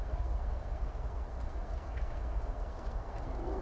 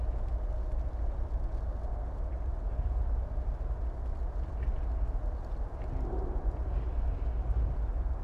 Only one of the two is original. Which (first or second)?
second